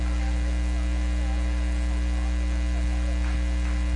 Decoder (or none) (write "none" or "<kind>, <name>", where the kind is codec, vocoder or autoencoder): none